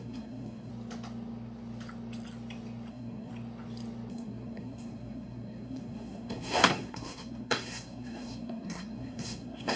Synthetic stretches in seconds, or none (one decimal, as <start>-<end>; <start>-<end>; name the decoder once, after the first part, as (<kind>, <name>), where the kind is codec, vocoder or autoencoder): 0.0-0.7 (codec, SNAC); 2.9-3.3; 4.1-9.8